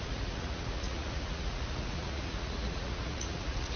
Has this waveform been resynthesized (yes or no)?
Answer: yes